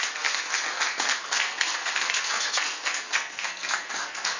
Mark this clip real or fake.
fake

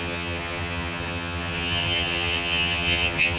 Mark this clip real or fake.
fake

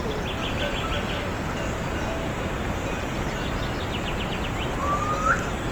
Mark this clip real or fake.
real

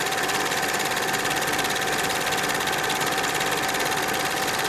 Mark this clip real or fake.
real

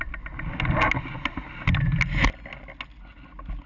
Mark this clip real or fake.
real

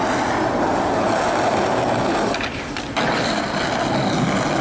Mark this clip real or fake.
real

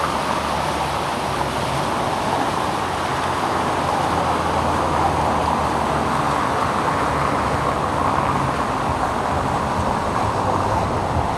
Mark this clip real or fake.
real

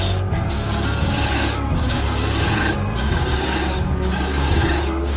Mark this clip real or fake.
fake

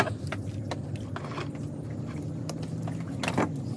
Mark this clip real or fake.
real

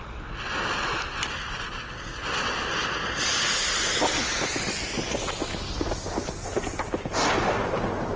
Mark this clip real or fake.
real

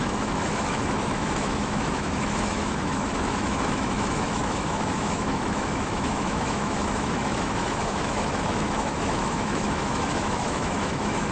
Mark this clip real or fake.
fake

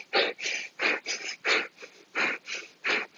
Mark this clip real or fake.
real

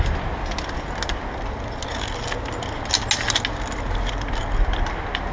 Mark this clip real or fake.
real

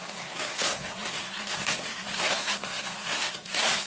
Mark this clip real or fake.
fake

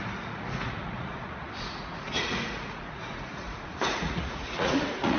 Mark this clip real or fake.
fake